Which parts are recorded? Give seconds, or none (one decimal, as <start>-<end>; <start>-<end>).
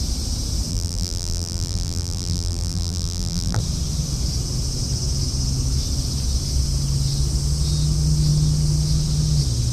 0.0-0.7; 3.6-9.7